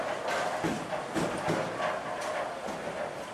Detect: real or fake real